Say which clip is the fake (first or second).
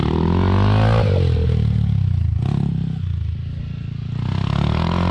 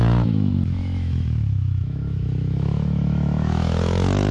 second